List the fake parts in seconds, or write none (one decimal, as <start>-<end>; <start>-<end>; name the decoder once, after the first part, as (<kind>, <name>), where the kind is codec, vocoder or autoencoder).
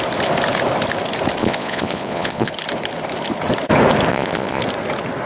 1.4-2.5 (vocoder, Vocos); 4.1-4.6